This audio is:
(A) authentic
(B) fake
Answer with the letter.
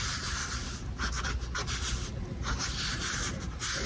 A